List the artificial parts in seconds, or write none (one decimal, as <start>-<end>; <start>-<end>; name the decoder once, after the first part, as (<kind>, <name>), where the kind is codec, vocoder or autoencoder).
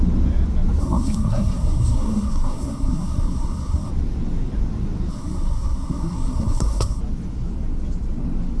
0.8-3.9 (codec, SNAC); 5.1-7.0